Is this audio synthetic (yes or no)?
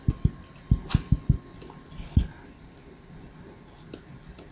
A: no